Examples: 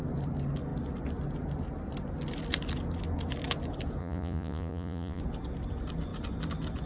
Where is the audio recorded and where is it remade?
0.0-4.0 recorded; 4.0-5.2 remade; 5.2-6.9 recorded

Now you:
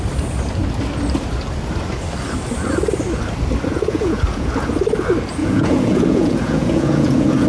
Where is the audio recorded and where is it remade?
0.0-3.7 recorded; 3.7-4.5 remade; 4.5-5.4 recorded; 5.4-7.5 remade

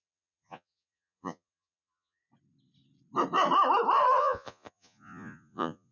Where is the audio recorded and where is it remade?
0.0-2.2 remade; 2.2-4.2 recorded; 4.2-5.9 remade